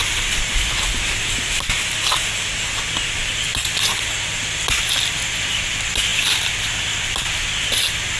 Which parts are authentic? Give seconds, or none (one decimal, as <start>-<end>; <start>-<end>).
0.0-8.2